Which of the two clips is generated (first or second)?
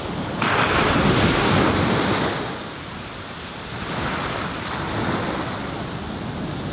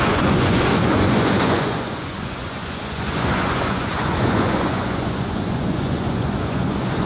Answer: second